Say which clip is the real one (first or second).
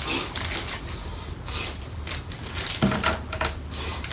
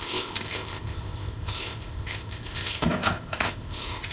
first